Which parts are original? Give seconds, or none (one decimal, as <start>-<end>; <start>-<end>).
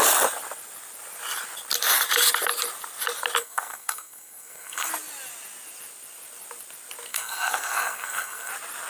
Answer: 0.0-3.4; 4.9-7.1; 8.5-8.9